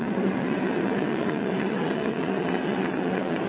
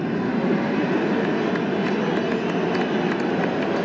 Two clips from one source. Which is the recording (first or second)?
second